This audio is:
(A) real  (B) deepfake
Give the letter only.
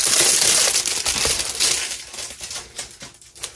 A